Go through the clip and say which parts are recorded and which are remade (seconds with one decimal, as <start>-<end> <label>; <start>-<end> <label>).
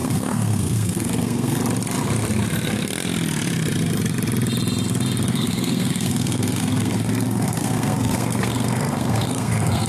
0.0-1.6 remade; 1.6-5.3 recorded; 5.3-9.9 remade